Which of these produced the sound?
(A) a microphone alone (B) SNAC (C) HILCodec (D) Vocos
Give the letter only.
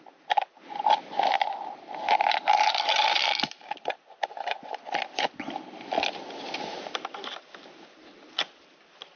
A